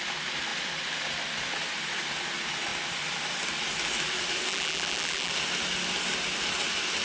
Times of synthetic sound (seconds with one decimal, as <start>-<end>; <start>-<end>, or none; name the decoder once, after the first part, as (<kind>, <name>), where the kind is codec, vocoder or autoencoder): 4.5-5.3 (vocoder, BigVGAN v2)